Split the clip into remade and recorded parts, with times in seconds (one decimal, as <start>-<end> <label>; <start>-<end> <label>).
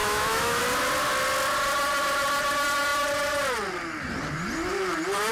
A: 0.0-0.6 remade; 0.6-5.3 recorded